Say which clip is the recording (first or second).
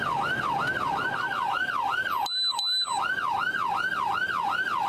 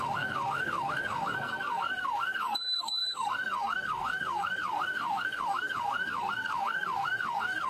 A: first